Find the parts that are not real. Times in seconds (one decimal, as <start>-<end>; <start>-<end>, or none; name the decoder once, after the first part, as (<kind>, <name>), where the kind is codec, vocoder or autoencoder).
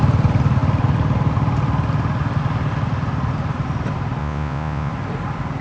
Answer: 4.2-4.9 (vocoder, Vocos)